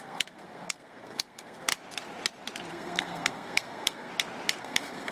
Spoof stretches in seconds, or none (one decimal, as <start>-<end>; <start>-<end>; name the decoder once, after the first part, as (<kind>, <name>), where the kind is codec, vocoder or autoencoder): 0.0-1.7 (codec, SNAC); 2.7-4.1; 4.6-5.1